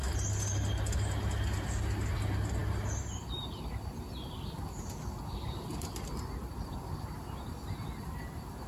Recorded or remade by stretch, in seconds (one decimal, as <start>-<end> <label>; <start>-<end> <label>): 0.0-8.7 recorded